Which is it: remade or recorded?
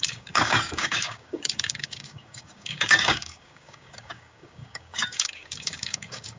remade